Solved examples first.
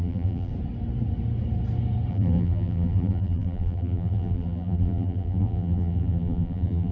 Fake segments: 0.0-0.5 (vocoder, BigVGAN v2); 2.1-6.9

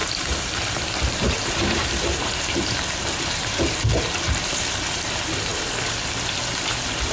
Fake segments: 0.0-3.8 (vocoder, BigVGAN v2)

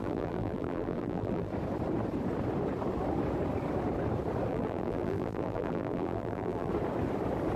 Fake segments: 0.0-1.5 (vocoder, BigVGAN v2); 4.5-6.7

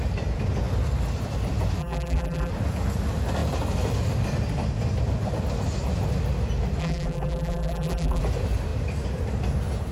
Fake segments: 1.8-2.5 (vocoder, BigVGAN v2); 6.8-8.2

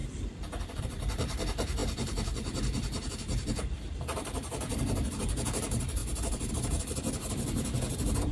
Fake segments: 0.8-8.3 (vocoder, BigVGAN v2)